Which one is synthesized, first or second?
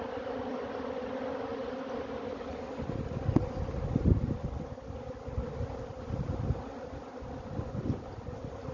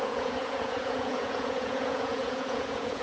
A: second